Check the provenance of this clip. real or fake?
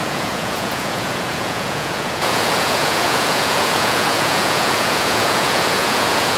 fake